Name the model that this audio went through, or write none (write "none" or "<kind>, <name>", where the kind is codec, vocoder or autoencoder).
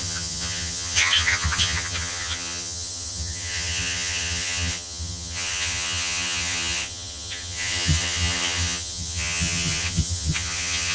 vocoder, HiFi-GAN